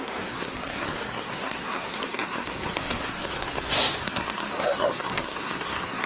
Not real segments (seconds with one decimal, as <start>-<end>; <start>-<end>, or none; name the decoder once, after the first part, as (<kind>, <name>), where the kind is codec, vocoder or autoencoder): 0.0-6.1 (codec, SNAC)